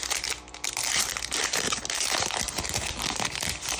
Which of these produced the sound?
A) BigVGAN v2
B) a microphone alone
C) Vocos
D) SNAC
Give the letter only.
B